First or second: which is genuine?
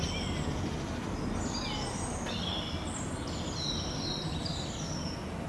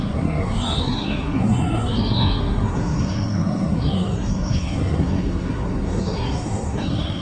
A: first